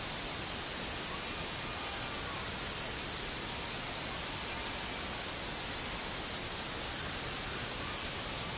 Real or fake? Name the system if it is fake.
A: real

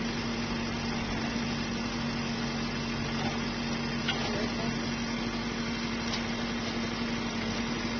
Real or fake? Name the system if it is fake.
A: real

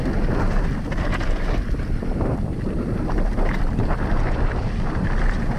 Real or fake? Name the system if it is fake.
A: real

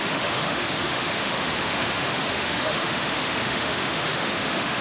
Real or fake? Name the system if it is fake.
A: fake, autoencoder, DAC-VAE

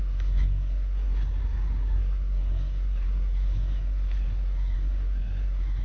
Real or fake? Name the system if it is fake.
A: fake, codec, SNAC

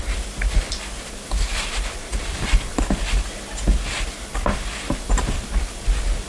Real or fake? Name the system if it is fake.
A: real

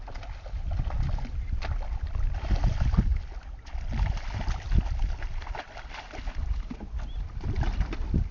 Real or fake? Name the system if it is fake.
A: real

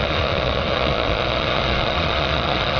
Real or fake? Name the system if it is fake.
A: fake, vocoder, Vocos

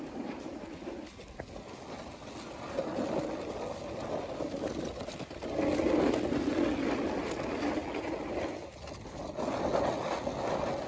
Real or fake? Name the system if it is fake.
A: real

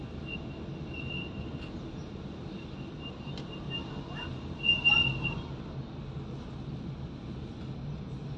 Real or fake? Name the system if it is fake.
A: real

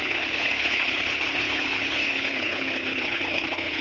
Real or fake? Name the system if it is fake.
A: fake, codec, HILCodec